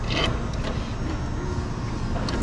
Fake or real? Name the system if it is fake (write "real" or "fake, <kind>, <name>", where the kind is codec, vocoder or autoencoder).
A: real